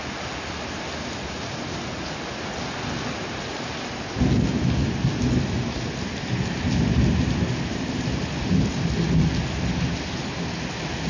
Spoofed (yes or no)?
no